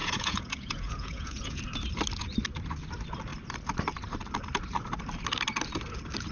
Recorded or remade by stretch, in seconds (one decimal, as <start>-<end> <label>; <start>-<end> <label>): 0.0-1.6 remade; 1.6-6.3 recorded